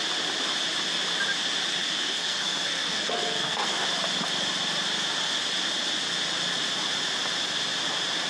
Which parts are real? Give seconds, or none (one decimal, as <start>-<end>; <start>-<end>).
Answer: 0.0-1.8; 3.8-8.3